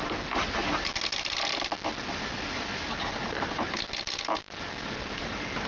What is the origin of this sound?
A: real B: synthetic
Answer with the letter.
A